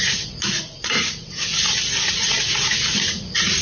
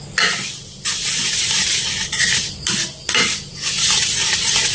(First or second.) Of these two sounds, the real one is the second